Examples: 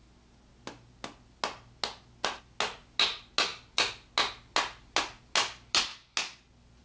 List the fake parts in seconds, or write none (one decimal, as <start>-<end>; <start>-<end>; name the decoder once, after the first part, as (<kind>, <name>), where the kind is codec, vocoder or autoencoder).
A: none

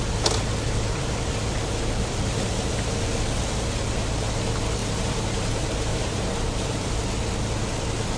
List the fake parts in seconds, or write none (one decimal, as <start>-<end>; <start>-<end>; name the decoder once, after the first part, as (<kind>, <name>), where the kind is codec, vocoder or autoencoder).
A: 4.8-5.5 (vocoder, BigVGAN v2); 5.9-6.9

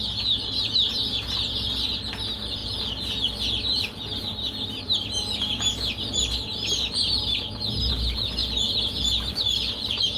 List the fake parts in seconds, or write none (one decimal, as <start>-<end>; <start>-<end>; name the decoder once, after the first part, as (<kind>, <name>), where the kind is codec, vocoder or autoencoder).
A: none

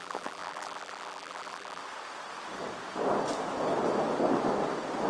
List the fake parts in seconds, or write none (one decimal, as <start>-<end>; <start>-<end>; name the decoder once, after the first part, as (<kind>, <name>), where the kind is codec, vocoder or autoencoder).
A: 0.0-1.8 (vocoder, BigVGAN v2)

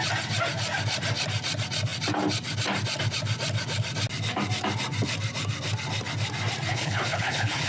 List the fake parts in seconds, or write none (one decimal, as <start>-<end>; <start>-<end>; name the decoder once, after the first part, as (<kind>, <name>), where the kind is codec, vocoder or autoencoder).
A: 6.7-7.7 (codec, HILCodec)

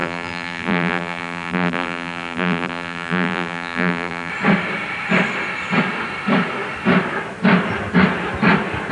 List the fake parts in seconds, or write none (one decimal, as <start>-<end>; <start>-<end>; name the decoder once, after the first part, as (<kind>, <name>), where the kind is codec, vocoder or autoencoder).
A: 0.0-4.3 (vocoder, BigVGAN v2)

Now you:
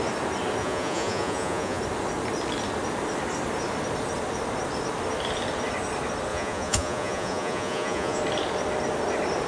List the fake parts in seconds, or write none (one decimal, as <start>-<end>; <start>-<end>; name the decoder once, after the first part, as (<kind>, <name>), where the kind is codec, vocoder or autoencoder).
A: 0.6-1.8 (vocoder, Vocos); 6.3-8.2

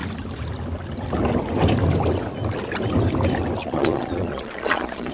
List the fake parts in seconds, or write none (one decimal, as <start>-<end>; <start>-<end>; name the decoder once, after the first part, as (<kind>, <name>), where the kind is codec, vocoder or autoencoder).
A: 3.6-5.1 (vocoder, Vocos)